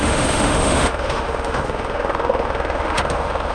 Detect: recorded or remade remade